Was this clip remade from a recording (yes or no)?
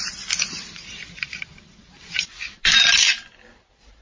no